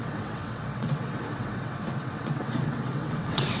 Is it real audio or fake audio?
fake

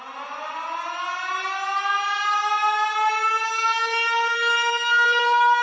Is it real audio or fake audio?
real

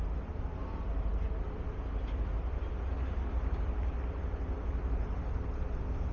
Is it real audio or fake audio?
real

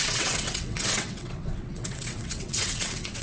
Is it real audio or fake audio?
fake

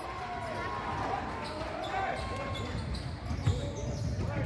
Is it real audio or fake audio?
real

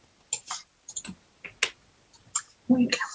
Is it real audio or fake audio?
real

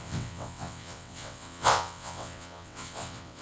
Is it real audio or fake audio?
fake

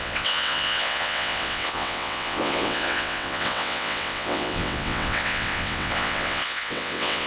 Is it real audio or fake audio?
fake